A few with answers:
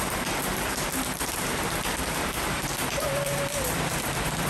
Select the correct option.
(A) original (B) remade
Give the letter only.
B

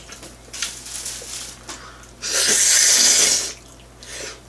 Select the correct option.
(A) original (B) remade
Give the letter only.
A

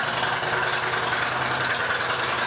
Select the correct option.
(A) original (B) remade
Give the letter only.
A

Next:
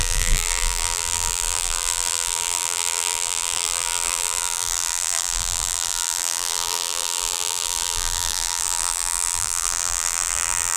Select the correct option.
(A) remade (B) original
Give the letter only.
A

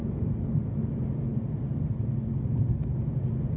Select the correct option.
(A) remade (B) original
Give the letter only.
B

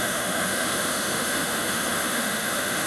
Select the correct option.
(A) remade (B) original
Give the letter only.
A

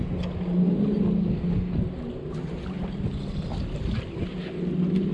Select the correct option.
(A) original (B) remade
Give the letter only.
A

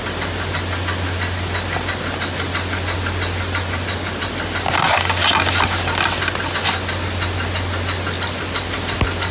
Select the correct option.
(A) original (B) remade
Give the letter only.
A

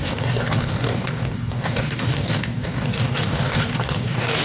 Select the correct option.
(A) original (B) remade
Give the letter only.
B